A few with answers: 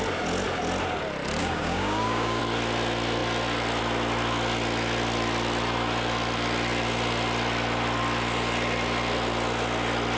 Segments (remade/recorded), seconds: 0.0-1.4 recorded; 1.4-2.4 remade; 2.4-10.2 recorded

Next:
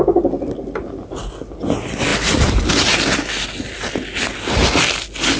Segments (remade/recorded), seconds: 0.0-5.4 recorded

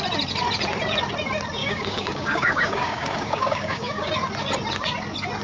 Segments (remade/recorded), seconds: 0.0-1.6 recorded; 1.6-4.1 remade; 4.1-5.4 recorded